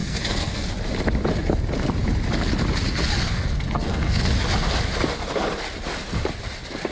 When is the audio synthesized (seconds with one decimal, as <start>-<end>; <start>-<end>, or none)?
0.0-0.6; 3.2-4.3